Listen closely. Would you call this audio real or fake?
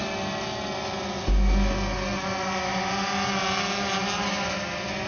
real